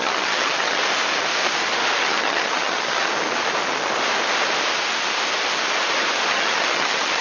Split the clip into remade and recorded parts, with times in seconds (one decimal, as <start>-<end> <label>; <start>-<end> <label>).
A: 0.0-0.8 remade; 0.8-2.0 recorded; 2.0-3.1 remade; 3.1-6.3 recorded; 6.3-7.2 remade